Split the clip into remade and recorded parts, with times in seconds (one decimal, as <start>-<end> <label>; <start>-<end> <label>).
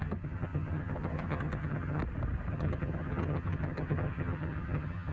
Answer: 0.0-2.0 remade; 2.0-2.5 recorded; 2.5-5.1 remade